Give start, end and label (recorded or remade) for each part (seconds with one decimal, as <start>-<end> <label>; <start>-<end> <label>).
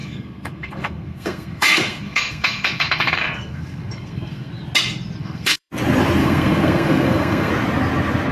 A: 0.0-4.5 remade; 4.5-5.2 recorded; 5.2-5.7 remade; 5.7-6.2 recorded; 6.2-7.5 remade; 7.5-8.3 recorded